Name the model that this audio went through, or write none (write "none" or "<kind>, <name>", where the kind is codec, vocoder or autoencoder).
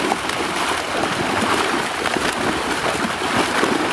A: none